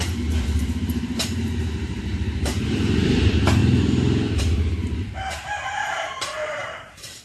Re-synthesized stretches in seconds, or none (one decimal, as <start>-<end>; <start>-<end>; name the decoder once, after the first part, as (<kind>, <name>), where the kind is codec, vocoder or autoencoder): 0.0-3.6 (vocoder, BigVGAN v2); 4.4-7.2